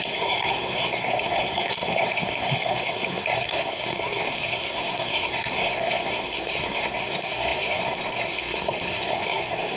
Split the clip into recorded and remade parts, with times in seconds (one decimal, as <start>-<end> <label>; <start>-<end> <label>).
0.0-9.8 remade